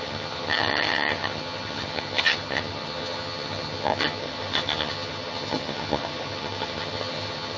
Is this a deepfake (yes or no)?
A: yes